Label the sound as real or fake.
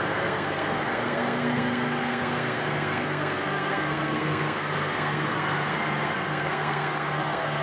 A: fake